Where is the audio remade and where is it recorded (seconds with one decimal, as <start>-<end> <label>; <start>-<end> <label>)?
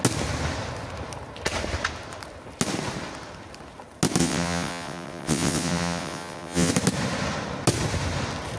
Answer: 0.0-4.2 recorded; 4.2-6.7 remade; 6.7-8.6 recorded